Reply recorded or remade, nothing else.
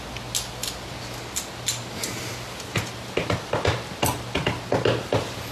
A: recorded